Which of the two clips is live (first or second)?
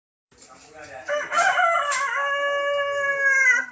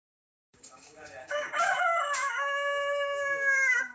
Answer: first